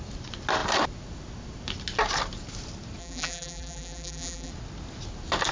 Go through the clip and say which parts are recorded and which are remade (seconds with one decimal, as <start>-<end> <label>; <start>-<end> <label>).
0.0-3.0 recorded; 3.0-4.5 remade; 4.5-5.5 recorded